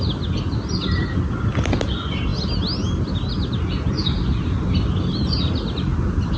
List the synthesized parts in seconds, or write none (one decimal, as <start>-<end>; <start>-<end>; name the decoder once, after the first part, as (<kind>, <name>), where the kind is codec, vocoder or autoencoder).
none